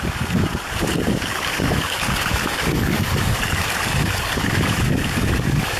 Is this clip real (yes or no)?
no